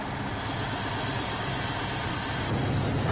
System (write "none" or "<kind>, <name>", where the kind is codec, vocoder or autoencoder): none